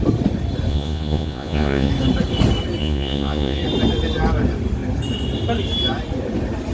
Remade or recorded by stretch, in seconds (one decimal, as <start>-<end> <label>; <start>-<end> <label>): 0.0-0.7 recorded; 0.7-1.9 remade; 1.9-2.8 recorded; 2.8-3.6 remade; 3.6-6.7 recorded